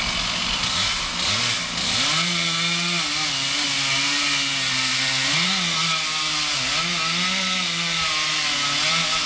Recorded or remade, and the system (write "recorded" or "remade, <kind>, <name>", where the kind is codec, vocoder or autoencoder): recorded